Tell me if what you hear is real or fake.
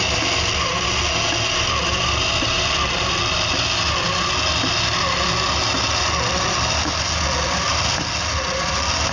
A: real